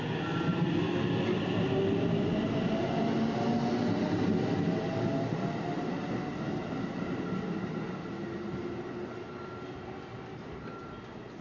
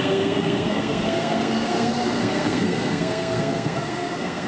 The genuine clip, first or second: first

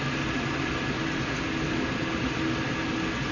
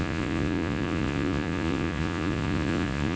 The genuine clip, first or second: first